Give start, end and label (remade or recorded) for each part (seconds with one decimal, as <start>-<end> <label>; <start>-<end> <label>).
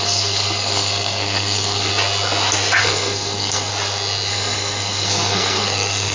0.0-1.9 remade; 1.9-2.8 recorded; 2.8-3.7 remade; 3.7-4.3 recorded; 4.3-6.1 remade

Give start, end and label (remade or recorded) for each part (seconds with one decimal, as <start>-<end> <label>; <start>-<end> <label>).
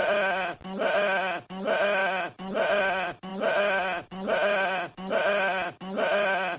0.0-6.6 recorded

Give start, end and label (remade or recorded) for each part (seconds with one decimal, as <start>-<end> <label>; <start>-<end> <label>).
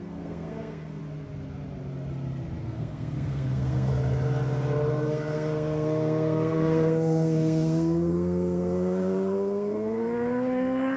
0.0-1.0 remade; 1.0-2.6 recorded; 2.6-3.9 remade; 3.9-4.9 recorded; 4.9-11.0 remade